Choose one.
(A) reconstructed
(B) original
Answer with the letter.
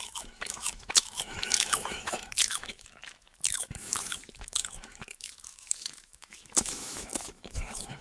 A